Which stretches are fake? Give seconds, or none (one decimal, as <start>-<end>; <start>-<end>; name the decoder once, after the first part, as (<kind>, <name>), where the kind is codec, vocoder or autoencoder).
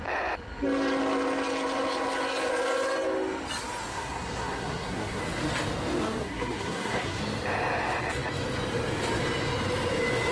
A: 3.9-5.2 (codec, SNAC); 6.2-7.2